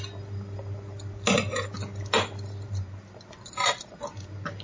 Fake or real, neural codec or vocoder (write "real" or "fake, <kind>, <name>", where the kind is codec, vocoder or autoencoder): real